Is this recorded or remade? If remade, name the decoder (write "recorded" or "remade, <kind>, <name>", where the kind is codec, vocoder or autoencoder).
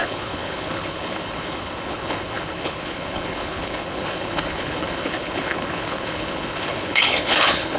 remade, codec, HILCodec